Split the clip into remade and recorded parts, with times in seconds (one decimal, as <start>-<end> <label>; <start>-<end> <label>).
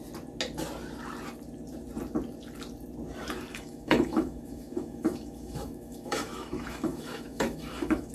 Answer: 0.0-3.5 recorded; 3.5-8.1 remade